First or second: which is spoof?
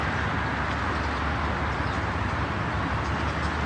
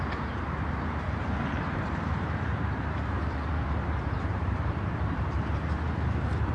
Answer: second